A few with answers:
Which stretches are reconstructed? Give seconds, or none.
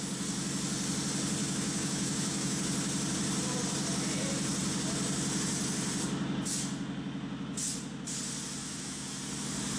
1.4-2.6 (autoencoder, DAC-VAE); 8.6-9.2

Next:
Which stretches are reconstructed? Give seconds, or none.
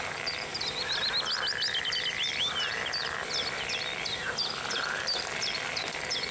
0.5-1.1 (vocoder, BigVGAN v2)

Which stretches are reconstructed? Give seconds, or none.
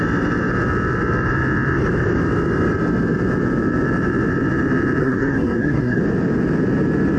5.0-6.0 (codec, SNAC)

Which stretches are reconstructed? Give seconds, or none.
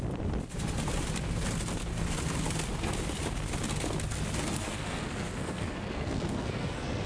4.5-7.1 (codec, SNAC)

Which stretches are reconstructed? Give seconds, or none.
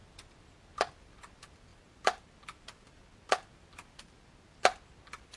1.7-2.2 (vocoder, BigVGAN v2)